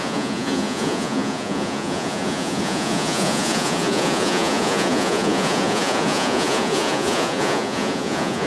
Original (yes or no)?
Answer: no